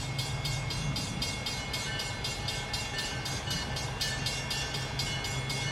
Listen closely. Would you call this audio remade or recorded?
recorded